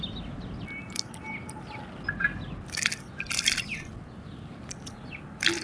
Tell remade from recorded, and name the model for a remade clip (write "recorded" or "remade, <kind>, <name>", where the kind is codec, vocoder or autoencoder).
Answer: recorded